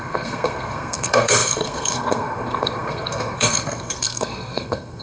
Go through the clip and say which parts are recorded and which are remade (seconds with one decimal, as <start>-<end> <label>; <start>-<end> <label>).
0.0-5.0 remade